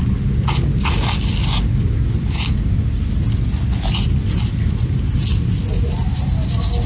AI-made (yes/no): no